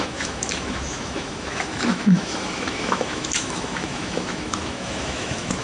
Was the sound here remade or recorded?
remade